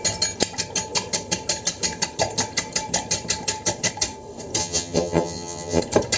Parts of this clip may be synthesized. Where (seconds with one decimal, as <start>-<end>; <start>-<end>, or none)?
4.6-5.8